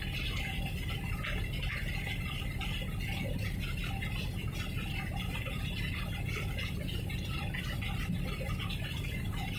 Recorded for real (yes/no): yes